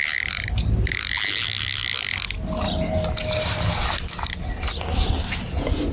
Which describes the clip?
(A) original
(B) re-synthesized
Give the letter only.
A